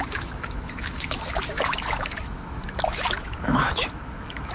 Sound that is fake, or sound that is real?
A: fake